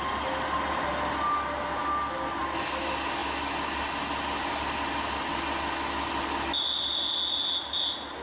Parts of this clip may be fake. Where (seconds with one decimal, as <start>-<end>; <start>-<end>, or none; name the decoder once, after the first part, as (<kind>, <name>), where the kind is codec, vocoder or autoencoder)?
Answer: none